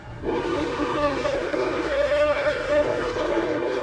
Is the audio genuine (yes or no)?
no